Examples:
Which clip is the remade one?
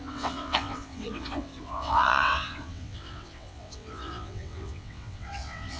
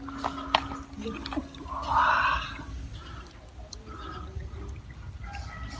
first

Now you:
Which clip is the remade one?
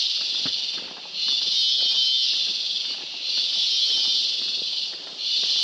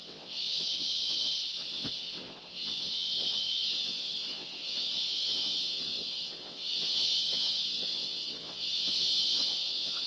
second